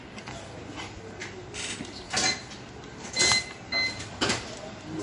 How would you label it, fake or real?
real